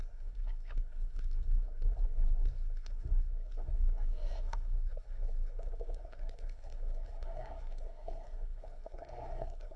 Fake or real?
fake